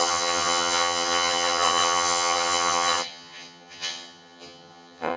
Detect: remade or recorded remade